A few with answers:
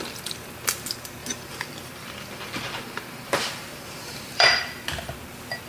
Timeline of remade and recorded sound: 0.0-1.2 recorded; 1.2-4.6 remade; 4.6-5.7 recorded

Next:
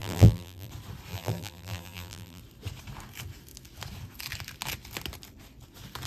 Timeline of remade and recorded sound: 0.0-0.7 remade; 0.7-1.1 recorded; 1.1-2.4 remade; 2.4-6.1 recorded

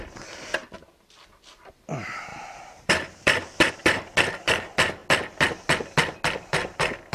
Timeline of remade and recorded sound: 0.0-2.3 recorded; 2.3-3.7 remade; 3.7-7.1 recorded

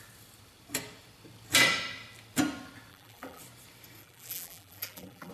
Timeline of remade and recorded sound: 0.0-2.9 recorded; 2.9-3.4 remade; 3.4-4.0 recorded; 4.0-5.3 remade

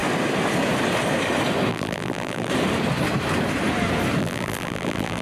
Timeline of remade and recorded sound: 0.0-1.7 recorded; 1.7-2.5 remade; 2.5-4.2 recorded; 4.2-5.2 remade

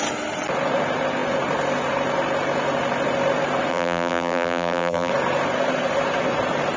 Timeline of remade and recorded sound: 0.0-3.7 recorded; 3.7-5.1 remade; 5.1-6.8 recorded

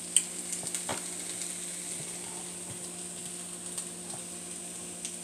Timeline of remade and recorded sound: 0.0-5.2 recorded